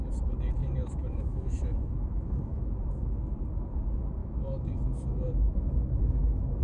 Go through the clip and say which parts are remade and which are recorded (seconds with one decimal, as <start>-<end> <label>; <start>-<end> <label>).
0.0-0.6 recorded; 0.6-3.2 remade; 3.2-4.2 recorded; 4.2-6.6 remade